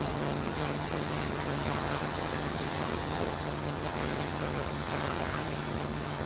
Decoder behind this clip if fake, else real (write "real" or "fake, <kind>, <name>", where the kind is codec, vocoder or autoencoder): fake, vocoder, HiFi-GAN